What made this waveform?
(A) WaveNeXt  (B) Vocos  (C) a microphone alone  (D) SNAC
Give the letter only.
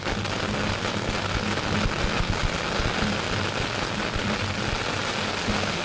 C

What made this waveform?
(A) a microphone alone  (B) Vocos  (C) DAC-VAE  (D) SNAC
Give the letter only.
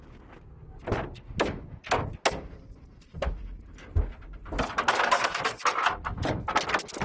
A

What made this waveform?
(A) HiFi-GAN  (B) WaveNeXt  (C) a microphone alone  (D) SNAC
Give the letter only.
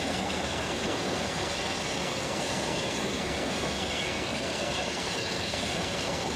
D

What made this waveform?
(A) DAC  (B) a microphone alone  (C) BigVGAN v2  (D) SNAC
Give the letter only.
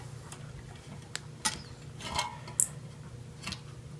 B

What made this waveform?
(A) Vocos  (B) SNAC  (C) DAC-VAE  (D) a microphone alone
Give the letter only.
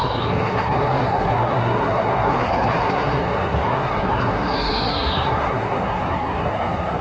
B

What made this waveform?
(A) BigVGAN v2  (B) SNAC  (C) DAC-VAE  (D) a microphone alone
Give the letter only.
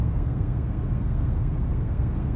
B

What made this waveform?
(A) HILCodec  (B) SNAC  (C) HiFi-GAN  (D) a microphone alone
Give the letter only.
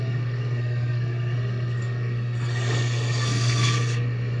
B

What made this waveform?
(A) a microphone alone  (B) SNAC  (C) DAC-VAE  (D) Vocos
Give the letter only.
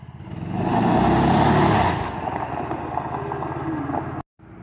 A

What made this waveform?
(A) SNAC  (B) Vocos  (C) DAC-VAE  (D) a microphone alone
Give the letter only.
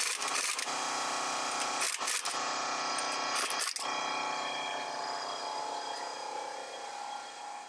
D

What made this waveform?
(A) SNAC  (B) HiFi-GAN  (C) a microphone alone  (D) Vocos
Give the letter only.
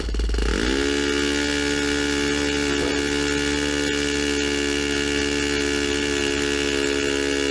C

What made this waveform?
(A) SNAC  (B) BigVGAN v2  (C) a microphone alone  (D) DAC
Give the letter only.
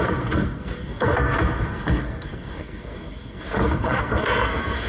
A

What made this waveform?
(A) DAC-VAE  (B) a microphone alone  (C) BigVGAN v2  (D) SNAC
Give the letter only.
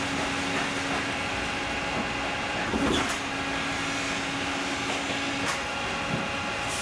B